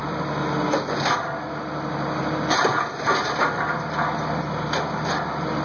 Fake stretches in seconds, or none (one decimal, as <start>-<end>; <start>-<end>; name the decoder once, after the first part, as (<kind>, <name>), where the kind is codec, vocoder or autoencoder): none